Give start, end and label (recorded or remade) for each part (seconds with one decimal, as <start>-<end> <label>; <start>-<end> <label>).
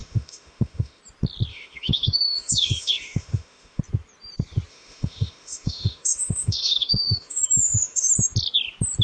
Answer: 0.0-1.0 remade; 1.0-1.5 recorded; 1.5-3.8 remade; 3.8-4.7 recorded; 4.7-8.1 remade; 8.1-9.0 recorded